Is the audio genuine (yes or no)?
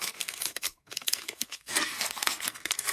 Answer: no